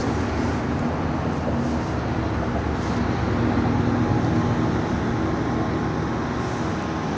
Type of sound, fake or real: real